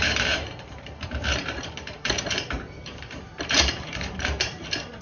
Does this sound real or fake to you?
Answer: fake